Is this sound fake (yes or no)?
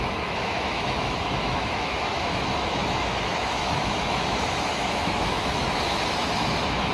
yes